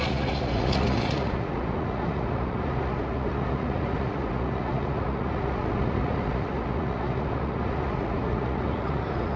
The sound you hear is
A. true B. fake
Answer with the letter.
B